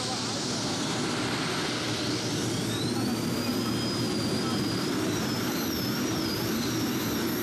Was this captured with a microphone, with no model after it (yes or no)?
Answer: yes